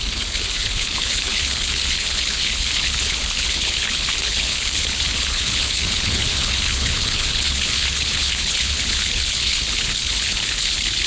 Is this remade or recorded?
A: remade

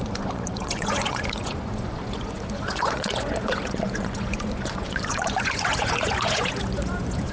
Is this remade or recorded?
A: remade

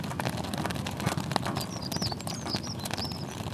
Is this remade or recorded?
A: recorded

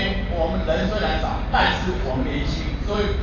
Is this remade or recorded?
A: remade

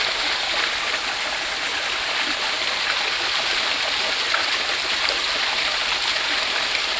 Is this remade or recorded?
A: recorded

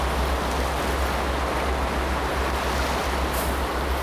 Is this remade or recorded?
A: recorded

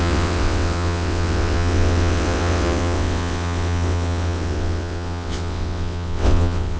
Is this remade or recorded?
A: remade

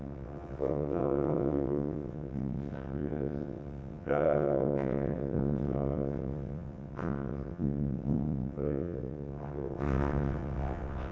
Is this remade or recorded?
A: remade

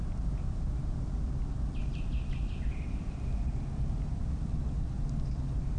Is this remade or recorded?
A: recorded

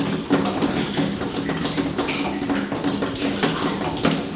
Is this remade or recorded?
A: recorded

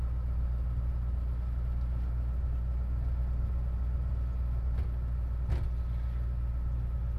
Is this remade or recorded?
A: recorded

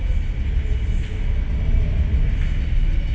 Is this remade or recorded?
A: recorded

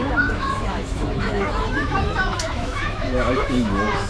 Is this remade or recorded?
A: remade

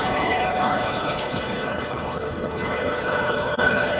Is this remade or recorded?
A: remade